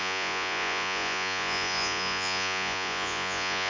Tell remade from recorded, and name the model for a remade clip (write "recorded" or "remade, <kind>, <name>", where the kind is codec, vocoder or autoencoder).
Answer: remade, vocoder, Vocos